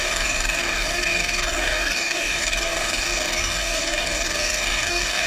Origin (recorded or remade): remade